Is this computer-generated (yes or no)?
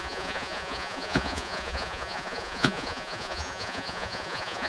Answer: yes